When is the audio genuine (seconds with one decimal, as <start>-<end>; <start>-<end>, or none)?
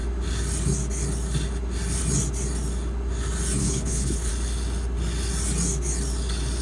0.0-3.6; 4.3-6.6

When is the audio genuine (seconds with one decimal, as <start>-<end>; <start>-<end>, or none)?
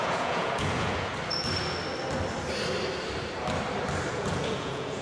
1.1-4.1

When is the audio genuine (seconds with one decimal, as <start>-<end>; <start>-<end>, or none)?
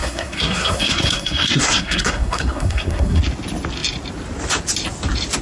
3.2-5.4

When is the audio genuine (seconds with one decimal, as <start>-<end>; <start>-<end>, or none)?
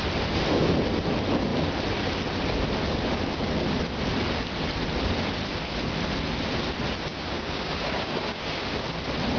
0.0-7.1; 8.7-9.4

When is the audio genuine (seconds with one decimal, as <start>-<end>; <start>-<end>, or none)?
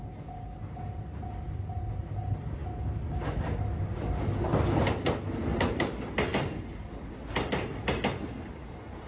0.0-9.1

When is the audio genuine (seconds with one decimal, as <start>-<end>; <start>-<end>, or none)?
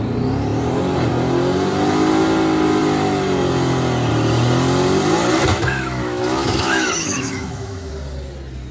0.0-5.5; 7.9-8.7